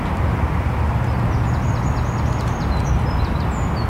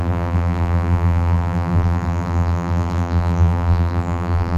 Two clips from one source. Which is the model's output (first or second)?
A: second